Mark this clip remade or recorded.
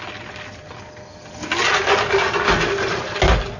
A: recorded